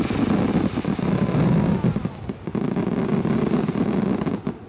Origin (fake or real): real